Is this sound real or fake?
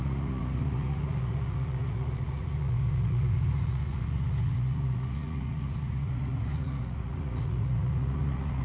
fake